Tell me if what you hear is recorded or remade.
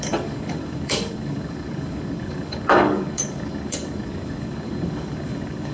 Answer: remade